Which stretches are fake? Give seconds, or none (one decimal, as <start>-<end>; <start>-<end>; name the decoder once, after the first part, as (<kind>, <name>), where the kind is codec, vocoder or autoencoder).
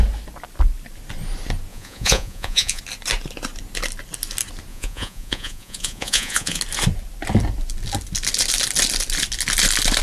1.7-2.8 (vocoder, Vocos); 4.7-6.6